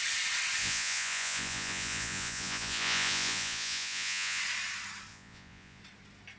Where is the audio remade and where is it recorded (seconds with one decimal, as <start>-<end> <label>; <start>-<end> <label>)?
0.0-0.6 recorded; 0.6-4.4 remade; 4.4-5.1 recorded; 5.1-5.8 remade; 5.8-6.4 recorded